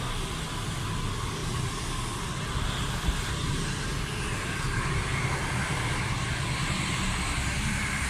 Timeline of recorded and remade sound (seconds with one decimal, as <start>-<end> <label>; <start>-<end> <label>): 0.0-8.1 recorded